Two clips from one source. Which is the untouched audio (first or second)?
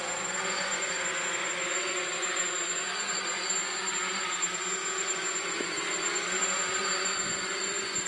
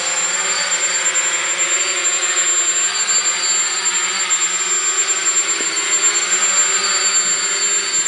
second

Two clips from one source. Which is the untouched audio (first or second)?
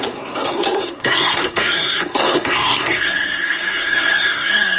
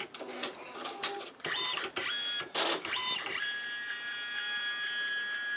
second